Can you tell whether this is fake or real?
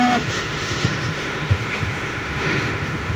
fake